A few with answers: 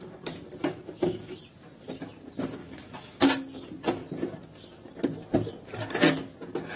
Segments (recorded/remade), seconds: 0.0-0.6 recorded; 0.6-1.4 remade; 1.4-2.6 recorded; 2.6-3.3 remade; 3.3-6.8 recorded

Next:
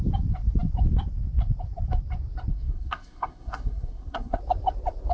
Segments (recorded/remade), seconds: 0.0-2.5 recorded; 2.5-4.4 remade; 4.4-5.1 recorded

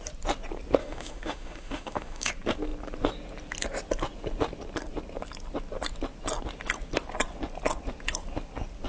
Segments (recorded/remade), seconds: 0.0-0.8 recorded; 0.8-2.3 remade; 2.3-8.9 recorded

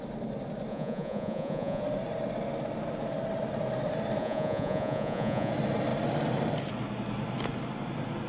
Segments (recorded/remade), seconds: 0.0-0.7 recorded; 0.7-1.8 remade; 1.8-4.2 recorded; 4.2-5.5 remade; 5.5-8.3 recorded

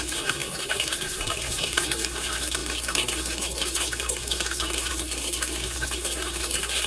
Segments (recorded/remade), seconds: 0.0-6.9 remade